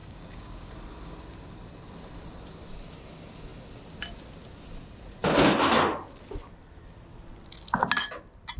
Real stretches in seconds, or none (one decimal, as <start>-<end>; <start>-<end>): 0.7-8.6